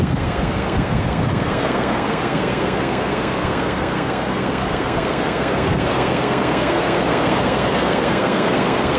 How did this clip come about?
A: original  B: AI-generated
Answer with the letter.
B